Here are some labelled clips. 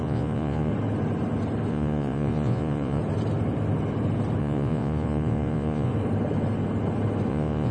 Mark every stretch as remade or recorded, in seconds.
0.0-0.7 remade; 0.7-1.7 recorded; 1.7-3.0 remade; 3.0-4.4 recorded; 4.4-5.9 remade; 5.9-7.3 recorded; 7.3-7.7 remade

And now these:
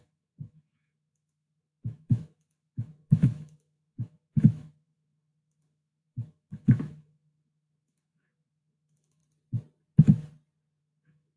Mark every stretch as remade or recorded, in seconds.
0.0-9.2 remade; 9.2-10.8 recorded; 10.8-11.4 remade

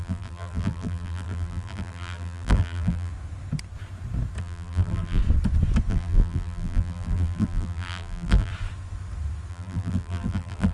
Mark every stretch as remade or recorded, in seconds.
0.0-3.1 remade; 3.1-4.4 recorded; 4.4-5.2 remade; 5.2-5.9 recorded; 5.9-8.5 remade; 8.5-9.5 recorded; 9.5-10.7 remade